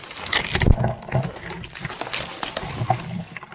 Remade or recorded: recorded